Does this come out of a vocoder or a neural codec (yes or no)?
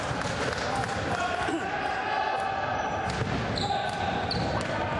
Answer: no